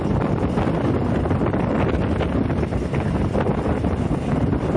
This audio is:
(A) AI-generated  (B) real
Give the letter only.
B